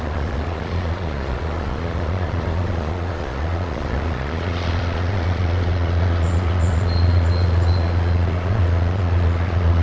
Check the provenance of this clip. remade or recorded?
remade